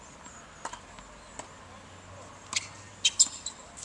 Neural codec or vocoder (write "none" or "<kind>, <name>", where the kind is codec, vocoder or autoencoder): none